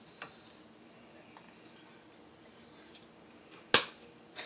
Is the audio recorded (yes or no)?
yes